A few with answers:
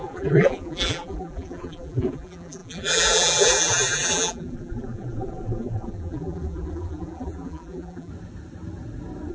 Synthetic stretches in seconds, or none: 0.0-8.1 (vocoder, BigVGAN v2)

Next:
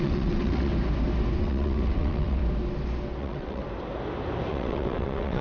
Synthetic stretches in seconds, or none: 0.0-0.7 (vocoder, WaveNeXt); 1.4-2.4; 3.2-3.6; 4.5-5.4

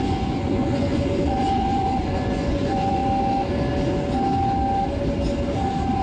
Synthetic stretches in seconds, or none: 0.0-3.0 (vocoder, Vocos)

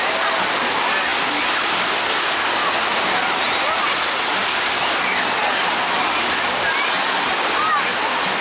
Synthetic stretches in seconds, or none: none

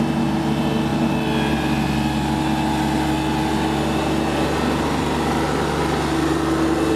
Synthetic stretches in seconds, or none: none